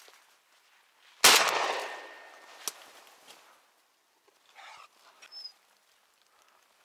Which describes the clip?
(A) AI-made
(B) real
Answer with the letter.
B